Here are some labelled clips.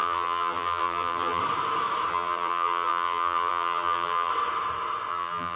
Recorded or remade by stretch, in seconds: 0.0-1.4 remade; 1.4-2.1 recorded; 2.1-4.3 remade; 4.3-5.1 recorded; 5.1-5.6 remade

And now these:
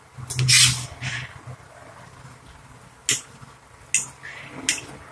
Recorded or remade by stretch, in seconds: 0.0-5.1 recorded

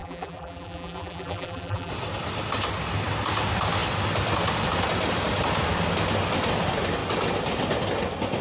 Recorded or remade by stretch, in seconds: 0.0-1.9 remade; 1.9-8.4 recorded

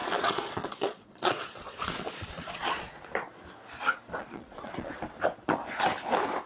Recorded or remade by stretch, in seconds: 0.0-3.0 remade; 3.0-4.2 recorded; 4.2-4.9 remade; 4.9-6.5 recorded

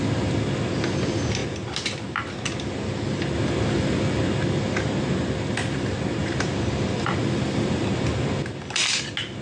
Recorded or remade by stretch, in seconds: 0.0-6.2 recorded; 6.2-7.8 remade; 7.8-9.4 recorded

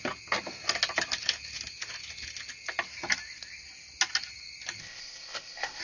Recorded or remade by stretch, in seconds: 0.0-4.8 recorded; 4.8-5.8 remade

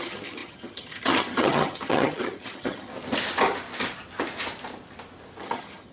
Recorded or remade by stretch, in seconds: 0.0-2.9 remade; 2.9-5.4 recorded; 5.4-5.9 remade